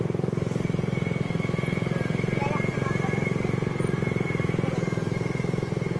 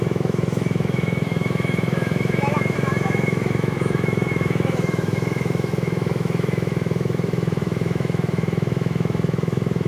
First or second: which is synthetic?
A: second